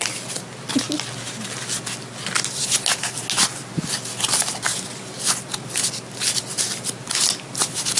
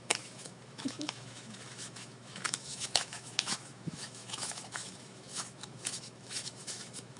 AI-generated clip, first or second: second